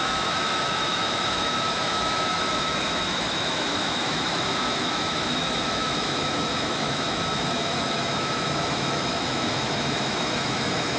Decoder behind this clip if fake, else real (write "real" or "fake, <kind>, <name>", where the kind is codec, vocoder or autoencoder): fake, autoencoder, DAC-VAE